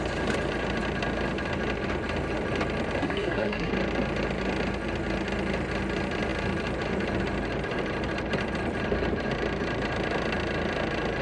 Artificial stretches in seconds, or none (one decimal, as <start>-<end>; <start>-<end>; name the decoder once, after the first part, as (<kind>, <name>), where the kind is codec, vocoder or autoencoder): 3.0-3.7 (codec, SNAC)